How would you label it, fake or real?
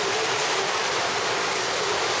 real